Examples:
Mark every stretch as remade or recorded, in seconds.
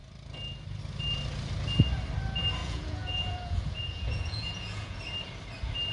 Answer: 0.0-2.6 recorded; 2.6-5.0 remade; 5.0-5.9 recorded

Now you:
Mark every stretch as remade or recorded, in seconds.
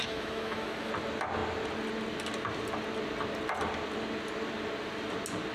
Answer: 0.0-0.9 remade; 0.9-5.5 recorded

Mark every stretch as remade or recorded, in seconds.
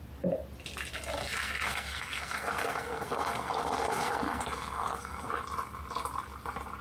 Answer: 0.0-1.2 recorded; 1.2-5.3 remade; 5.3-6.8 recorded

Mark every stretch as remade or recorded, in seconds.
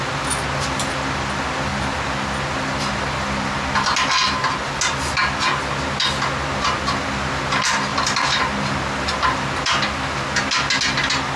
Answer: 0.0-7.9 recorded; 7.9-8.4 remade; 8.4-11.4 recorded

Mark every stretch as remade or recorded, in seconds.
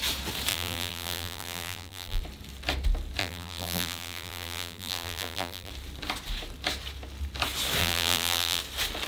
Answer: 0.0-0.5 recorded; 0.5-2.2 remade; 2.2-3.2 recorded; 3.2-5.7 remade; 5.7-7.8 recorded; 7.8-8.6 remade; 8.6-9.1 recorded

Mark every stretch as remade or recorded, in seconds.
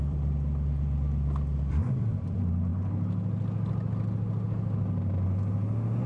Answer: 0.0-2.7 remade; 2.7-6.1 recorded